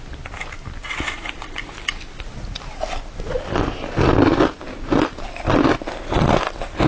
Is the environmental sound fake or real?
real